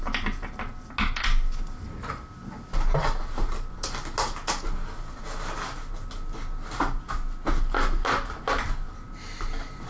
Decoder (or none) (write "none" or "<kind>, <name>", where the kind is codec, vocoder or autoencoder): none